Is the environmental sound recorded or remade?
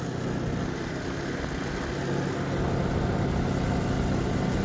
recorded